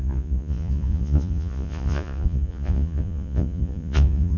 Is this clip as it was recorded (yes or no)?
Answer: no